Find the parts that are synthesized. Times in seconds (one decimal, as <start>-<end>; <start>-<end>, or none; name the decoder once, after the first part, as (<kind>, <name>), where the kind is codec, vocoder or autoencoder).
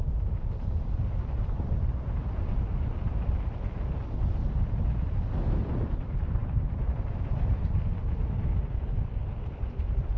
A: 0.0-8.5 (vocoder, BigVGAN v2); 9.4-10.2